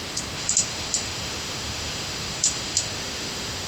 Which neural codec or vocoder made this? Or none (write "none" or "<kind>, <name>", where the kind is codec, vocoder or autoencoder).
autoencoder, DAC-VAE